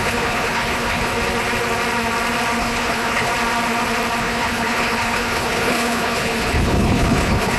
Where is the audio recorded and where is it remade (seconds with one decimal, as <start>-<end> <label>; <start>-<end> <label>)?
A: 0.0-1.1 remade; 1.1-2.6 recorded; 2.6-3.3 remade; 3.3-4.2 recorded; 4.2-7.6 remade